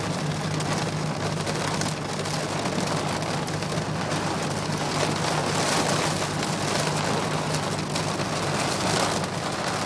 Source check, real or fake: real